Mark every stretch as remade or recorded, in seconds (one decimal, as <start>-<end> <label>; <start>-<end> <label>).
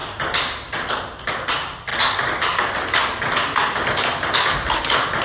0.0-5.2 recorded